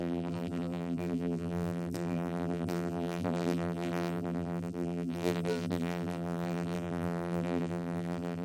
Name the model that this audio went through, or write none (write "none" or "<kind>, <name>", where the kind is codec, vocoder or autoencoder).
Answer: vocoder, BigVGAN v2